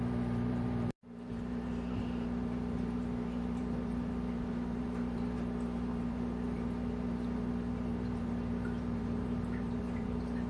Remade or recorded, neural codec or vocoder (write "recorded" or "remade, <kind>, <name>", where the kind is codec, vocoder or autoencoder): remade, vocoder, BigVGAN v2